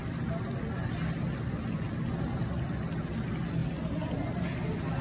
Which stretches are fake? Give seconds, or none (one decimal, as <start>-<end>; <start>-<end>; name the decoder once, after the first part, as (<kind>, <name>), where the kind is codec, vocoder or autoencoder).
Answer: none